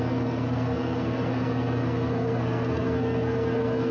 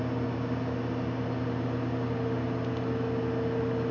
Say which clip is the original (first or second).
second